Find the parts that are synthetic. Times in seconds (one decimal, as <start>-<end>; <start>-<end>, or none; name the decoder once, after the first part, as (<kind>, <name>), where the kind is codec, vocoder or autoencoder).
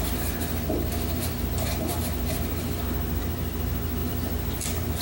none